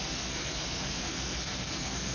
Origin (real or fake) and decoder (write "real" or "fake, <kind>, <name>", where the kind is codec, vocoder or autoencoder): fake, codec, SNAC